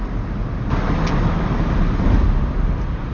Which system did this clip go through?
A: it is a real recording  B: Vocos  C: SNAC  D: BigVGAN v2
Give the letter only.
A